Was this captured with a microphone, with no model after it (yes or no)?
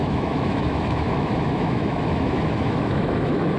no